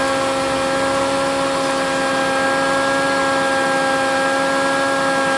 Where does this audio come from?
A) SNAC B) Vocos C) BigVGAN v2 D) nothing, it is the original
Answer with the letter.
D